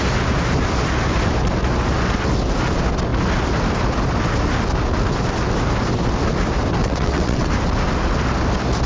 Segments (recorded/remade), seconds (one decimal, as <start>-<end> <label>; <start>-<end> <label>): 0.0-6.8 recorded; 6.8-7.5 remade; 7.5-8.9 recorded